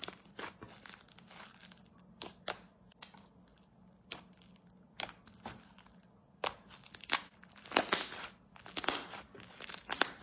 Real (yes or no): yes